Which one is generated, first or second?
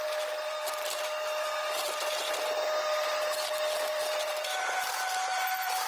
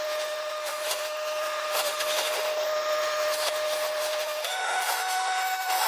second